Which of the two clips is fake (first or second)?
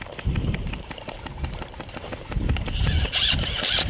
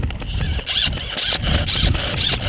first